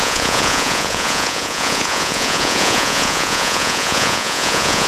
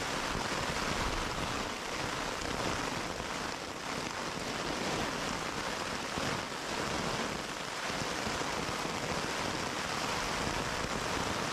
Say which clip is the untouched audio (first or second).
second